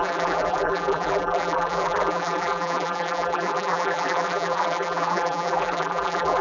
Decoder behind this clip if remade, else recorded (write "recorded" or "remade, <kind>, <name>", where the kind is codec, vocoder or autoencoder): remade, vocoder, BigVGAN v2